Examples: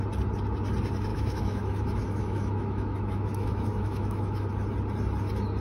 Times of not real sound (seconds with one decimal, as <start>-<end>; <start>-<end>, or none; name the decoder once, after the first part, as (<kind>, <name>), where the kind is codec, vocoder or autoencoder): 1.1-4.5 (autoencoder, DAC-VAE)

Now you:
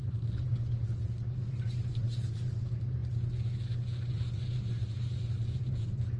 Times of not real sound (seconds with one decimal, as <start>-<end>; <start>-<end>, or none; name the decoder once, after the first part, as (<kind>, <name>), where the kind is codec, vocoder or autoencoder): 0.0-3.0 (vocoder, BigVGAN v2); 4.1-6.2

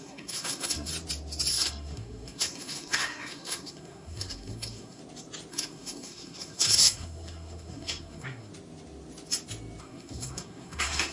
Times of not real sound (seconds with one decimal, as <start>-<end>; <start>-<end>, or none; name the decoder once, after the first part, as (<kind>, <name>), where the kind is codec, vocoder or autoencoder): 0.0-0.9 (codec, SNAC); 1.5-5.0; 5.5-8.5; 9.8-11.1